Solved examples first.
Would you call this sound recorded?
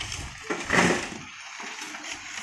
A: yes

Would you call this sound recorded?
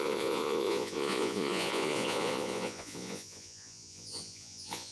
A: no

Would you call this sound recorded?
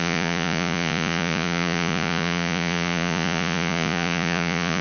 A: no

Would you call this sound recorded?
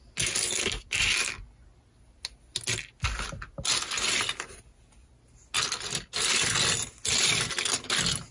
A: yes